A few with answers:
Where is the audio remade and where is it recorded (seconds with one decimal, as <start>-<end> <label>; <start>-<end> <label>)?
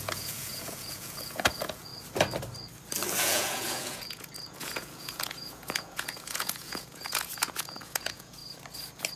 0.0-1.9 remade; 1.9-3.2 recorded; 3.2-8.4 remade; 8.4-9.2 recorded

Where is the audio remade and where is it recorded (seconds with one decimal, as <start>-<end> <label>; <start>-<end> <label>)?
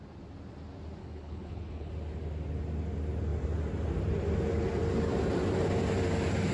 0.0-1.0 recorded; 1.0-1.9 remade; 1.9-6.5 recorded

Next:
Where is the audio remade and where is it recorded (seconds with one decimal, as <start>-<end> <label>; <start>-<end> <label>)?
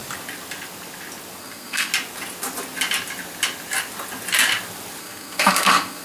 0.0-1.4 recorded; 1.4-1.9 remade; 1.9-5.0 recorded; 5.0-6.0 remade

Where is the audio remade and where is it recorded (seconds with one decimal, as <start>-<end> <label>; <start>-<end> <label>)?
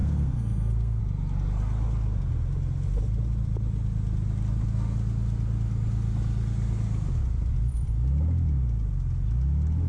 0.0-1.0 remade; 1.0-9.9 recorded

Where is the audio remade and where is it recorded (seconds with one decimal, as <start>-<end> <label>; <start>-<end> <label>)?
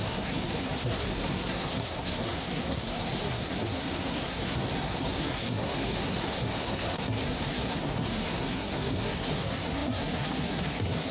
0.0-11.1 remade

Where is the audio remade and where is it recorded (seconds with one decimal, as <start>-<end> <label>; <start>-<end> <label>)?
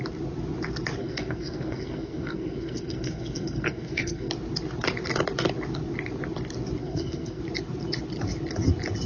0.0-1.0 recorded; 1.0-4.3 remade; 4.3-6.8 recorded; 6.8-7.4 remade; 7.4-9.1 recorded